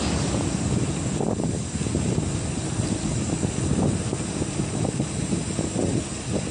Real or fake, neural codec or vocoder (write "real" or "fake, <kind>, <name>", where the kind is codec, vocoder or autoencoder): real